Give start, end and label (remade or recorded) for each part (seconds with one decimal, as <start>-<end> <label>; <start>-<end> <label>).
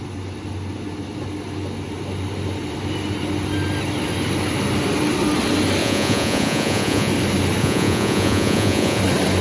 0.0-5.8 recorded; 5.8-7.1 remade; 7.1-7.6 recorded; 7.6-9.0 remade; 9.0-9.4 recorded